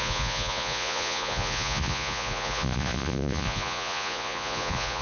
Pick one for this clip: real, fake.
fake